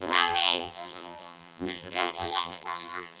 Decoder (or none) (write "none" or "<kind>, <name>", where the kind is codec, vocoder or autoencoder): vocoder, BigVGAN v2